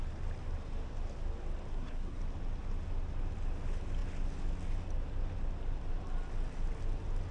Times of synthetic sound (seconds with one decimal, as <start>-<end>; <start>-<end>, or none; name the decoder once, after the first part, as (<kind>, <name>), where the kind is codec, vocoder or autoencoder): 1.7-2.2 (codec, SNAC)